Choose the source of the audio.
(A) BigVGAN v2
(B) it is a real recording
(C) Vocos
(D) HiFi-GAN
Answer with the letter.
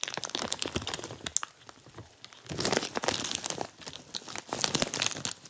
B